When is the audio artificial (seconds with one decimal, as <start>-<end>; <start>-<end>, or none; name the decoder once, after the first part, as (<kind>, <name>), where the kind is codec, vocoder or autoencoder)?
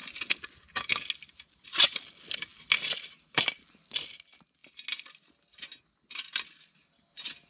none